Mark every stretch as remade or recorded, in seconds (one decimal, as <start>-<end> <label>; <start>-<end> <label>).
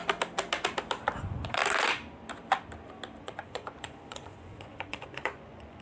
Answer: 0.0-1.2 recorded; 1.2-1.6 remade; 1.6-3.2 recorded; 3.2-5.8 remade